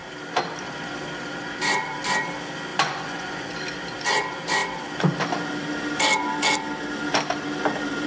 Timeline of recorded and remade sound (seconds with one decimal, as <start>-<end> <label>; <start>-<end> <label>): 0.0-2.7 recorded; 2.7-3.5 remade; 3.5-8.1 recorded